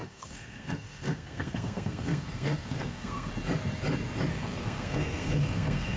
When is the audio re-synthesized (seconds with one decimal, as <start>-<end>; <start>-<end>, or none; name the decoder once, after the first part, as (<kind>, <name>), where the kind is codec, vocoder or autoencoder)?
0.0-3.3 (codec, SNAC); 4.3-6.0